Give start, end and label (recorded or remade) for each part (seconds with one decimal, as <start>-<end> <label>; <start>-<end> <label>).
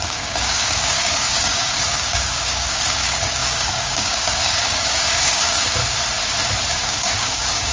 0.0-5.8 remade; 5.8-6.7 recorded; 6.7-7.7 remade